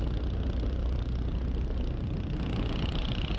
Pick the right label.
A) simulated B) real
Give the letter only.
B